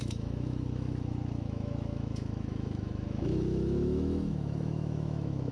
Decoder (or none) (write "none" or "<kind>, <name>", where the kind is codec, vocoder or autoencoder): autoencoder, DAC-VAE